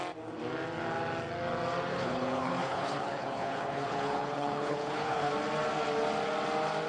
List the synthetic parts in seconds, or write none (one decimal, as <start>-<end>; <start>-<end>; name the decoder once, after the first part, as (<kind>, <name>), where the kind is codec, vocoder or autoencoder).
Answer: 1.9-5.3 (codec, HILCodec)